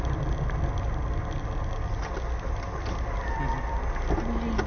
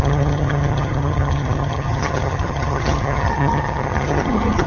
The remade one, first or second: second